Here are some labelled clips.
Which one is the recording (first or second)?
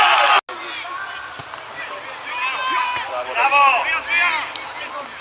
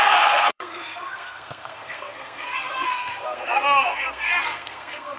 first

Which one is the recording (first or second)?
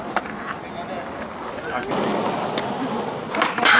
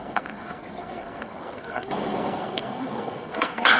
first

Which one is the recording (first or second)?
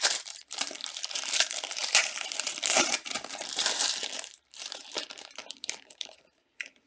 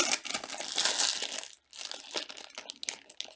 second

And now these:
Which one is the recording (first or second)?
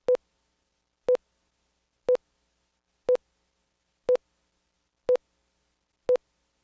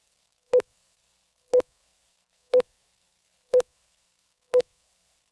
first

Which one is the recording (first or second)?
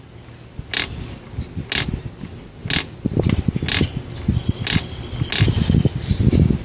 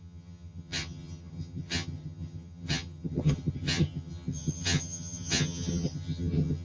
first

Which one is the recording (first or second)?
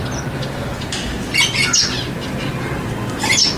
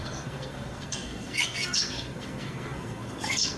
first